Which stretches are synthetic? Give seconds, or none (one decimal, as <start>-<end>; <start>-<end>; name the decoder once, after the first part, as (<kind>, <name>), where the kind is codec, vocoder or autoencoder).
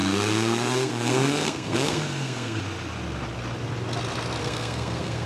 0.0-2.6 (codec, SNAC); 4.4-5.3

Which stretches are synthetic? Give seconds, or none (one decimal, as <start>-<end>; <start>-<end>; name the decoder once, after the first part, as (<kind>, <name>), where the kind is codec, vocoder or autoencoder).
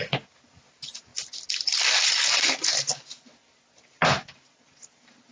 none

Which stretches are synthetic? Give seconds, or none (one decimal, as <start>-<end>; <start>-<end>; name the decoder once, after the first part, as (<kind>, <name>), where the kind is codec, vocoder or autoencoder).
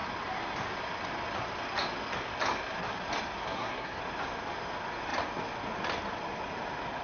3.4-4.0 (codec, SNAC)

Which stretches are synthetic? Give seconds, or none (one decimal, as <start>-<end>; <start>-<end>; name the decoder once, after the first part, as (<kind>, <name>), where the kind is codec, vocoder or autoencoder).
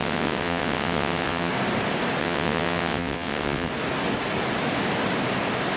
0.0-1.5 (vocoder, WaveNeXt); 2.2-3.7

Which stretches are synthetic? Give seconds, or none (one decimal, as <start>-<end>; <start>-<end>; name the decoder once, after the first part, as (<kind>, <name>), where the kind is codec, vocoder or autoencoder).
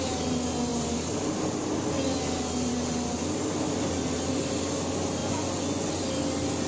5.2-5.9 (vocoder, Vocos)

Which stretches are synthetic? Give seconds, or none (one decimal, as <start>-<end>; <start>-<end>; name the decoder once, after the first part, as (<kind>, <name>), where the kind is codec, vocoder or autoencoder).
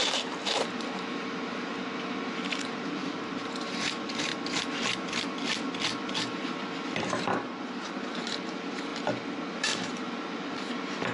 0.0-4.3 (vocoder, BigVGAN v2); 7.3-8.9; 9.5-11.1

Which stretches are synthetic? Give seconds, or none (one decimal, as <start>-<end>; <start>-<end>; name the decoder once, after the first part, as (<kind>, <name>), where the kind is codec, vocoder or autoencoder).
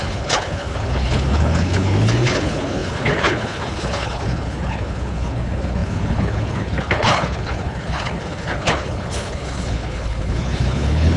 0.0-11.2 (codec, HILCodec)